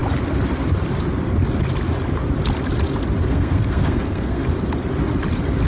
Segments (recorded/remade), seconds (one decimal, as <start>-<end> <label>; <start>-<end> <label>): 0.0-3.3 recorded; 3.3-4.4 remade; 4.4-5.7 recorded